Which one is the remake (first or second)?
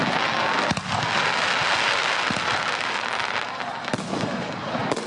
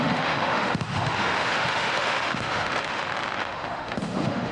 second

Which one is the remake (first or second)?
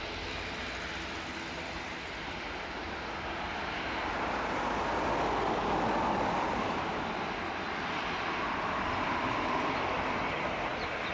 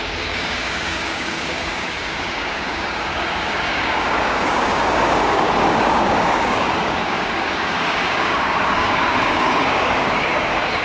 second